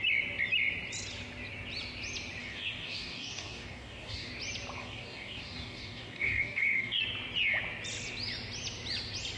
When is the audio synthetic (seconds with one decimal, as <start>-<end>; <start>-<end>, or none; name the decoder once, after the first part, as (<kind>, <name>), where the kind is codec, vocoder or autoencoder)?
2.4-4.3 (codec, DAC); 4.8-7.0